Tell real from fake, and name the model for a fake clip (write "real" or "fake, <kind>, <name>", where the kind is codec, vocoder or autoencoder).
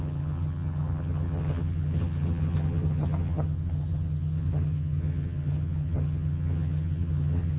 fake, vocoder, HiFi-GAN